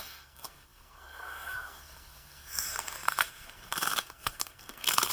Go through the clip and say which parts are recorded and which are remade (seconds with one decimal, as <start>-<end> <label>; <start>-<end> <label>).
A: 0.0-5.1 remade